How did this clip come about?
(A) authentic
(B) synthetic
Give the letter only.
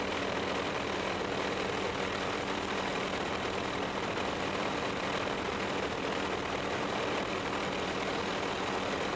B